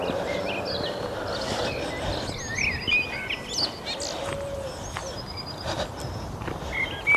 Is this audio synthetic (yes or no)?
no